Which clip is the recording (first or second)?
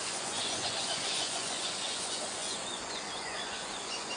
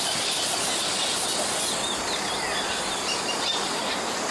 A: second